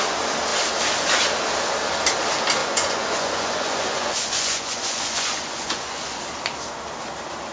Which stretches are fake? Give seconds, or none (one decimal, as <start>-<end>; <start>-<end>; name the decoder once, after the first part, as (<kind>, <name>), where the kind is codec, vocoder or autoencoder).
2.6-6.2 (vocoder, Vocos)